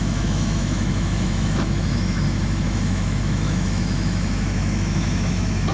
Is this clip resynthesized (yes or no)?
yes